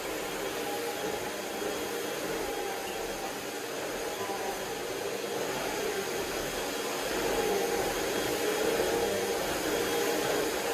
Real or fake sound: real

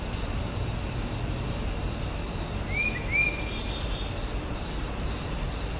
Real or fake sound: real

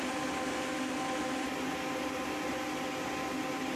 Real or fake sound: real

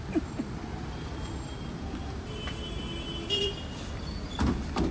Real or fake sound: real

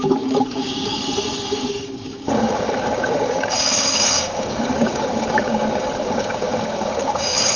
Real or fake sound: fake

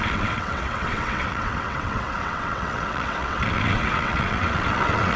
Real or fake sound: fake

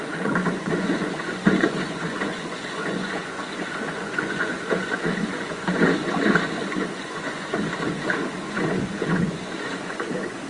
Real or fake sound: fake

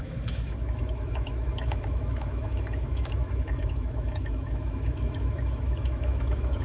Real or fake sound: fake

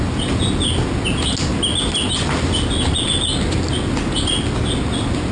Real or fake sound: real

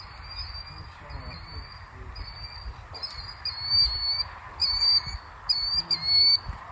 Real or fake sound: real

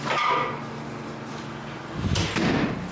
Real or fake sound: real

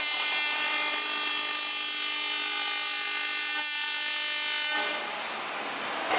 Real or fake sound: real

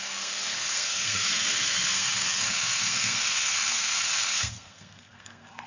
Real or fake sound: fake